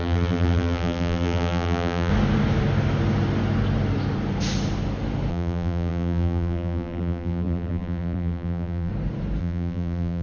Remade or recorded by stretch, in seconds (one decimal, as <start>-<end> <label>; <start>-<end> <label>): 0.0-2.1 remade; 2.1-5.3 recorded; 5.3-8.9 remade; 8.9-9.4 recorded; 9.4-10.2 remade